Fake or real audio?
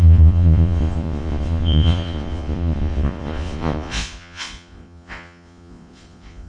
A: fake